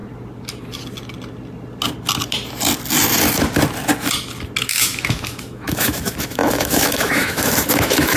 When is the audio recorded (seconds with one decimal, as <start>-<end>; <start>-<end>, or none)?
0.0-4.7